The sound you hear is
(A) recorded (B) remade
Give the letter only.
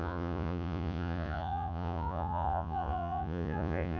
B